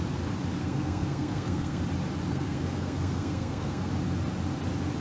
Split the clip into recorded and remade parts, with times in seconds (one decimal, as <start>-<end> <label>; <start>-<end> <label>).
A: 0.0-0.6 recorded; 0.6-1.8 remade; 1.8-2.3 recorded; 2.3-3.9 remade; 3.9-5.0 recorded